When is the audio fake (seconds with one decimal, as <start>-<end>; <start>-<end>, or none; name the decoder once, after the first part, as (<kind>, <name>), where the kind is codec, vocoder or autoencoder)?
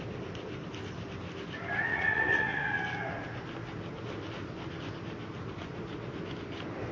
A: 1.9-2.7 (vocoder, Vocos)